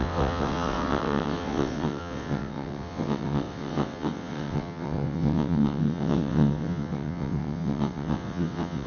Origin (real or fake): fake